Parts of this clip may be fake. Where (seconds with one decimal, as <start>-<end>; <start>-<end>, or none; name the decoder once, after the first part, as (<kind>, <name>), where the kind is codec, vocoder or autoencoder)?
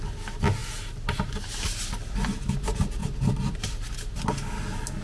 3.0-3.8 (vocoder, BigVGAN v2)